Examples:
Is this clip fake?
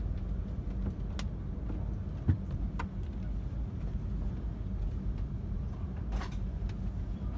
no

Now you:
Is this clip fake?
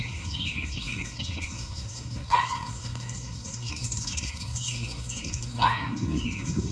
yes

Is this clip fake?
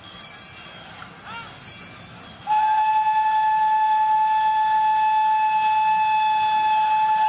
no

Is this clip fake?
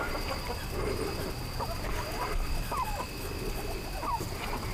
no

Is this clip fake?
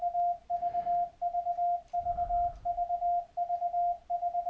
no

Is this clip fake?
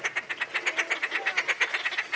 no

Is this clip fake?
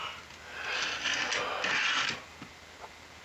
no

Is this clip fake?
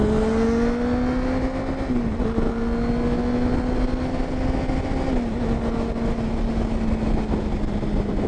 no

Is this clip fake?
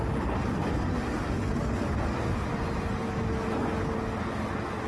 no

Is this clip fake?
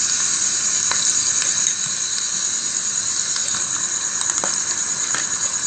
no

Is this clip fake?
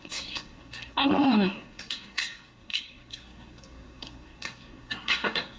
yes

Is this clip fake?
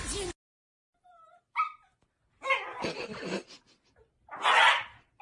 no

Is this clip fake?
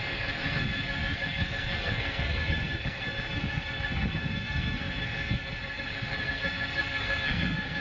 yes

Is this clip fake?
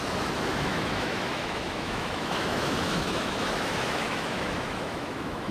yes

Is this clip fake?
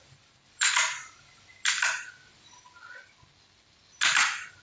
no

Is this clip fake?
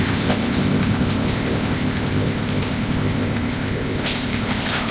yes